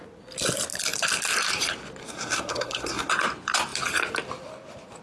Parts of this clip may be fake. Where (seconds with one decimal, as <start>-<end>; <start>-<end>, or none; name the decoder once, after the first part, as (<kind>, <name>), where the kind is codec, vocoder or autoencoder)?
2.0-3.1 (codec, SNAC)